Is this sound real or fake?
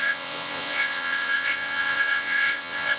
fake